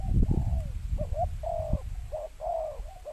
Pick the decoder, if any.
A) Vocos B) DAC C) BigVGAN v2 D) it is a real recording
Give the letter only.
D